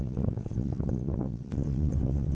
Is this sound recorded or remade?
remade